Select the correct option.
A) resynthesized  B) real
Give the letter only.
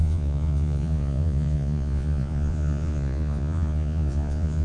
A